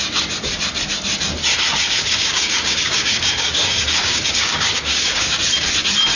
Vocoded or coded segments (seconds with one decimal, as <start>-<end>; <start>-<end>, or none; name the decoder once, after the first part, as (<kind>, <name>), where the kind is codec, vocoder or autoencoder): 1.8-5.4 (codec, DAC)